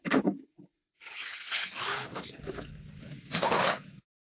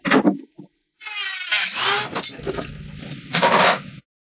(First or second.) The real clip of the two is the second